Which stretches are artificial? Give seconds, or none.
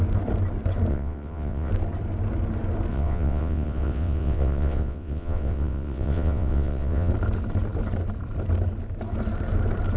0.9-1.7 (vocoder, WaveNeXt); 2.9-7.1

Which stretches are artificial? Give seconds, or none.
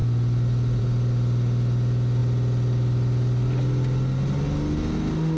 none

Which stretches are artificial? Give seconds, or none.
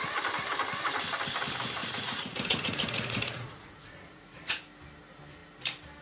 1.8-4.6 (vocoder, Vocos)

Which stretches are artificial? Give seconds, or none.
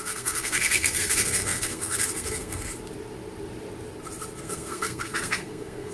0.0-2.7 (codec, SNAC); 4.4-5.9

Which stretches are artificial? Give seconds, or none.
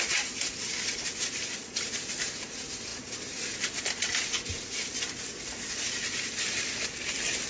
0.0-2.9 (vocoder, BigVGAN v2); 3.6-4.2; 5.3-7.5